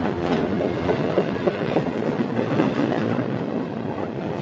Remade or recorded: remade